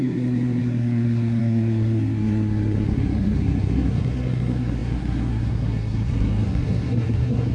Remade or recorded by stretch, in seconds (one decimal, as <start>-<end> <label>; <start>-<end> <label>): 0.0-7.5 remade